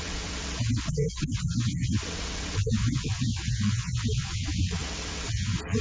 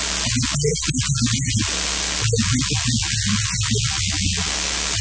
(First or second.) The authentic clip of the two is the second